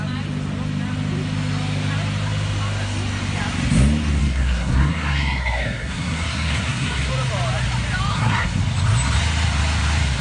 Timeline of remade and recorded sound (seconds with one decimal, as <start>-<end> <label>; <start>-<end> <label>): 0.0-4.2 recorded; 4.2-7.1 remade; 7.1-8.1 recorded; 8.1-8.6 remade; 8.6-10.2 recorded